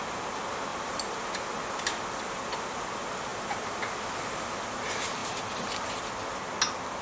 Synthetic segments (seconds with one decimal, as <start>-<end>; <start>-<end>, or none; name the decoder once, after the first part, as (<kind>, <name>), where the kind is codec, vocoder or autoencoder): 0.7-1.5 (vocoder, BigVGAN v2); 5.2-5.9